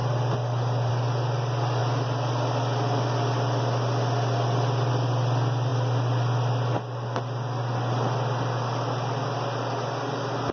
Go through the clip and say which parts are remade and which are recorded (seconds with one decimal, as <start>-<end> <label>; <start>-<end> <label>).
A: 0.0-10.5 recorded